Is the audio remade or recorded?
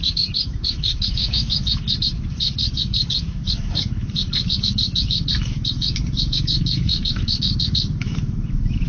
remade